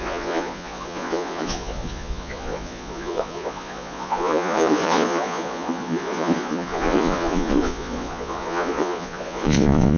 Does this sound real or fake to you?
fake